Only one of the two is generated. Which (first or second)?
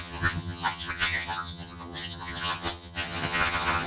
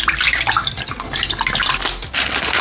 first